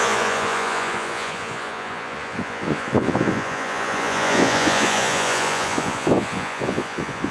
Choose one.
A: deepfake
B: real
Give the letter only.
A